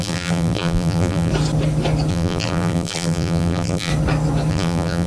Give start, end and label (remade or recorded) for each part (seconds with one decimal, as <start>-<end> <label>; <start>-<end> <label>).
0.0-1.3 remade; 1.3-2.1 recorded; 2.1-3.9 remade; 3.9-4.5 recorded; 4.5-5.1 remade